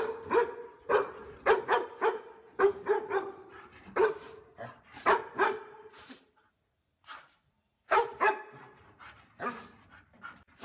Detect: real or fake fake